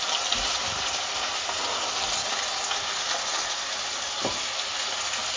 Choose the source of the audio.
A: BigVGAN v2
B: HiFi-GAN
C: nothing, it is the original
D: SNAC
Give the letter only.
C